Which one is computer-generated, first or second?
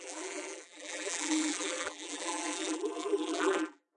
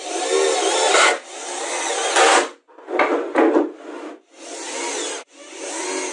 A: first